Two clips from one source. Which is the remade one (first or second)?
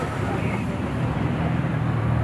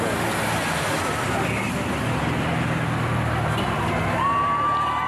first